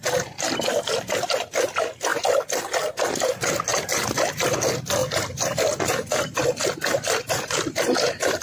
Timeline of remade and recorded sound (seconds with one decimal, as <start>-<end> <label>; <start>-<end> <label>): 0.0-2.1 recorded; 2.1-3.1 remade; 3.1-5.0 recorded; 5.0-8.4 remade